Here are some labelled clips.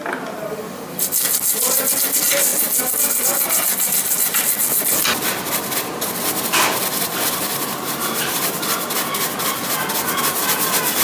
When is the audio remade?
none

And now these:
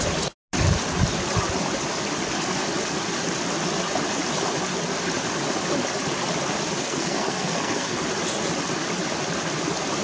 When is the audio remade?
6.8-8.0 (codec, SNAC)

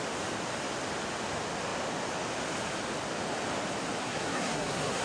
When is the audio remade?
4.0-5.0 (codec, SNAC)

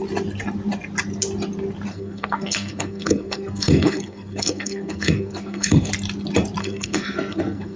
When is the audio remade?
1.9-5.9 (codec, SNAC); 6.6-7.8

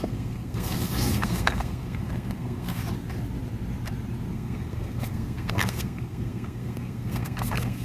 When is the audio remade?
0.0-2.8 (codec, SNAC); 4.3-7.8

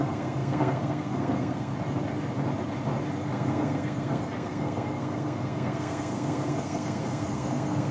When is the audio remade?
0.0-1.7 (codec, SNAC); 3.2-7.9

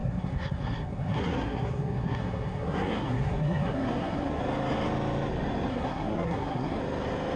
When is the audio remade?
0.0-4.4 (codec, SNAC); 5.7-6.8

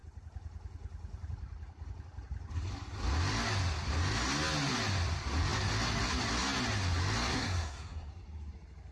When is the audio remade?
7.3-8.1 (codec, SNAC)